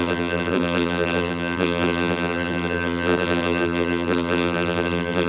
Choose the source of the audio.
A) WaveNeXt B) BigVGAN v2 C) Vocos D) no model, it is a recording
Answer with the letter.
B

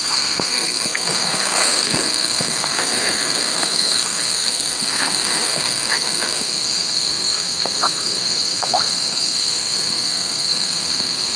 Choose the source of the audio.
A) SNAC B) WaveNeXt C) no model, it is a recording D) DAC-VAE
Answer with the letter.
A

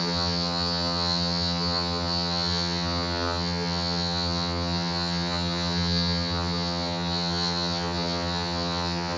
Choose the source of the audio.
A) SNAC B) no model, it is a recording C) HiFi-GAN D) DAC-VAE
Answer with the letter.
C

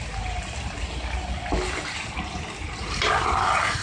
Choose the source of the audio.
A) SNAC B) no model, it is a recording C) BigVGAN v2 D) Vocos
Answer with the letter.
B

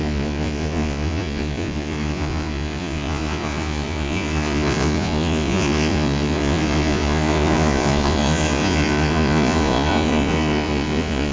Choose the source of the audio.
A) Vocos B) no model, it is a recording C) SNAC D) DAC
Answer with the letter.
A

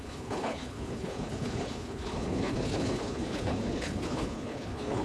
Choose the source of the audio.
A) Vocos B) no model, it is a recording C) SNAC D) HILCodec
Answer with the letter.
D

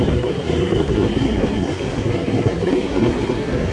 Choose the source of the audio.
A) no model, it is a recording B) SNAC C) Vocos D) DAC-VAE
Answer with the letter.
B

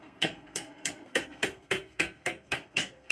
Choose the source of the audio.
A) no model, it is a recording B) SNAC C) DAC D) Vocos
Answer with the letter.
B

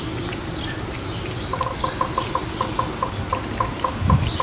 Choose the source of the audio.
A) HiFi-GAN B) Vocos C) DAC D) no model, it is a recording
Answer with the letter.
D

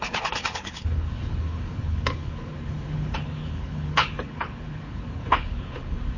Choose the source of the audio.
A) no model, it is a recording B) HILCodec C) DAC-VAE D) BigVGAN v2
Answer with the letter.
B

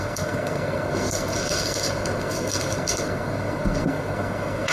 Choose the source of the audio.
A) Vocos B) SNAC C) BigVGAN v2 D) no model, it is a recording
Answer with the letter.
B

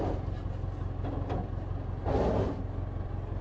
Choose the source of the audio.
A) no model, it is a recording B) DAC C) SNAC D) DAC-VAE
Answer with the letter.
A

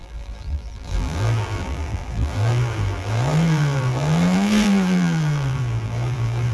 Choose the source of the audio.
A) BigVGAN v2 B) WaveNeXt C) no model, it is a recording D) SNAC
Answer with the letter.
A